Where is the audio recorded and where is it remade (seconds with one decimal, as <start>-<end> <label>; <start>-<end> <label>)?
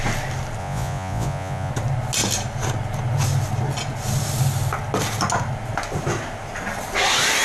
0.0-0.6 recorded; 0.6-1.7 remade; 1.7-7.4 recorded